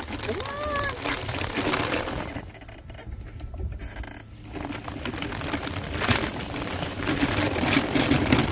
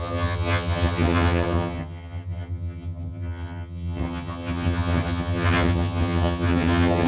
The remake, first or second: second